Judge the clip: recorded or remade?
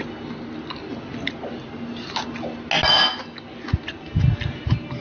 recorded